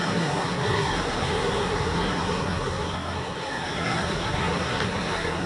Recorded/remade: remade